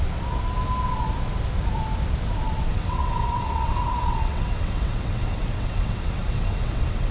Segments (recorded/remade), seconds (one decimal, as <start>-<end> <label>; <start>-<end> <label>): 0.0-2.7 recorded; 2.7-7.1 remade